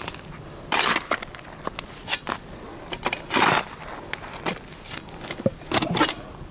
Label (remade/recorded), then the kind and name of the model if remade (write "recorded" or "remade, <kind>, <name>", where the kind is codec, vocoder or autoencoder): recorded